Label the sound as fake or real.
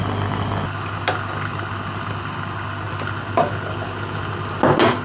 real